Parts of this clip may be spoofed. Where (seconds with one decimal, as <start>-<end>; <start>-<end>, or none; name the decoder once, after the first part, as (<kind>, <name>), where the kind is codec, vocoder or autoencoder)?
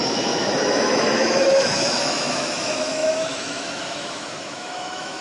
0.0-5.2 (autoencoder, DAC-VAE)